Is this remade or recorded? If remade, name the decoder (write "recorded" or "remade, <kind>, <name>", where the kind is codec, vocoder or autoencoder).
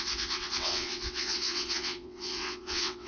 remade, vocoder, WaveNeXt